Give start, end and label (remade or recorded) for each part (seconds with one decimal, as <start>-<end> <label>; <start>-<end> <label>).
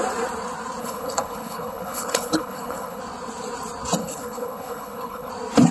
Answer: 0.0-0.8 recorded; 0.8-3.0 remade; 3.0-4.0 recorded; 4.0-5.3 remade; 5.3-5.7 recorded